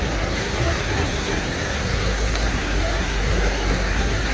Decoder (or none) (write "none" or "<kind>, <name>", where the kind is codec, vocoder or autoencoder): codec, SNAC